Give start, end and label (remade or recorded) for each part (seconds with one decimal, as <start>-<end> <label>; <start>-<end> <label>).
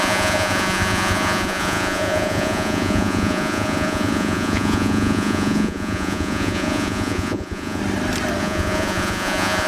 0.0-7.8 remade; 7.8-8.4 recorded; 8.4-9.7 remade